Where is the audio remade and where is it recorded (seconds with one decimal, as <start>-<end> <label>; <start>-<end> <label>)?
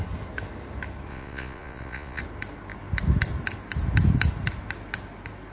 0.0-1.1 recorded; 1.1-2.2 remade; 2.2-5.5 recorded